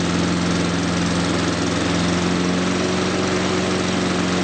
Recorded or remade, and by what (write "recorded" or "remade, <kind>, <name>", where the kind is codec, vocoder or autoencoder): recorded